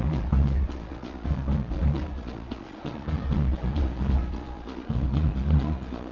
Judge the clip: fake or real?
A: fake